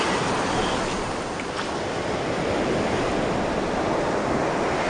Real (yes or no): yes